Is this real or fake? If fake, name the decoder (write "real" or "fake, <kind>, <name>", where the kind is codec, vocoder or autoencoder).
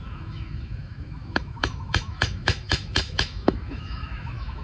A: fake, autoencoder, DAC-VAE